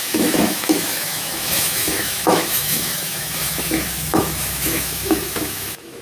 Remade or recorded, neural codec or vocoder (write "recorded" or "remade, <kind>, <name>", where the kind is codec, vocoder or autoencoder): remade, autoencoder, DAC-VAE